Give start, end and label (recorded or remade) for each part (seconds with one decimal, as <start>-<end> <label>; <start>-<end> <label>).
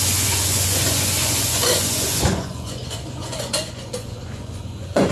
0.0-5.1 remade